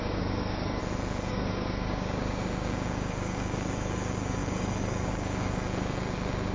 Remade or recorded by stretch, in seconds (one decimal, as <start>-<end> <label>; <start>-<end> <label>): 0.0-0.8 remade; 0.8-1.3 recorded; 1.3-6.5 remade